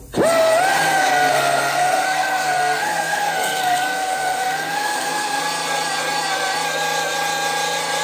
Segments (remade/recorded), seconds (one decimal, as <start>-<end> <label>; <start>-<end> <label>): 0.0-0.7 recorded; 0.7-5.4 remade; 5.4-8.0 recorded